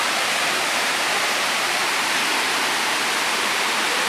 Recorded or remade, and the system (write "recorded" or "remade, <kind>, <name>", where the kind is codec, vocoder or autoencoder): remade, vocoder, BigVGAN v2